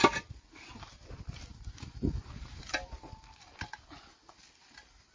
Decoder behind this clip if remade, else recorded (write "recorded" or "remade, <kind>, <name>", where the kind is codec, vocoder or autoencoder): recorded